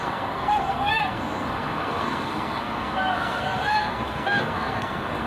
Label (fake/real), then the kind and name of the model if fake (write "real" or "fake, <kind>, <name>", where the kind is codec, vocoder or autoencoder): fake, codec, SNAC